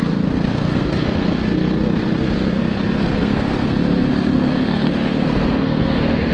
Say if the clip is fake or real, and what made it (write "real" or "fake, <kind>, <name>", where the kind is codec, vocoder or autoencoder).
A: fake, codec, SNAC